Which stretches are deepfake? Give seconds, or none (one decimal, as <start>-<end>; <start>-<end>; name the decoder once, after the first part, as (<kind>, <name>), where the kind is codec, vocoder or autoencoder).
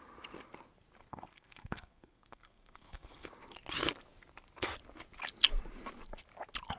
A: 1.1-3.3 (codec, SNAC)